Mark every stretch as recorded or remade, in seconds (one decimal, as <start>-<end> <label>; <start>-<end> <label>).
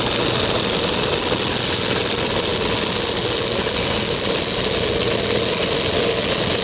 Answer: 0.0-6.6 recorded